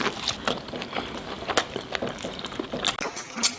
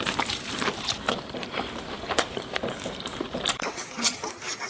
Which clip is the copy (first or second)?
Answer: second